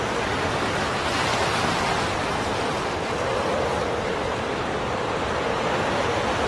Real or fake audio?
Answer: fake